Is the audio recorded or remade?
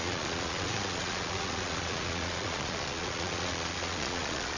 remade